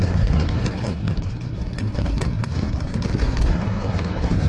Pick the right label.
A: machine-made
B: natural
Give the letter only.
A